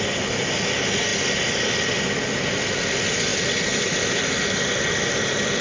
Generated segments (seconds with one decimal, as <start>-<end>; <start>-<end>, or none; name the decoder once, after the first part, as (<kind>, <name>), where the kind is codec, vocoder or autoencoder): none